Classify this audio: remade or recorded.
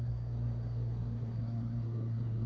remade